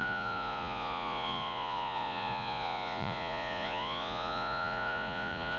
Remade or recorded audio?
remade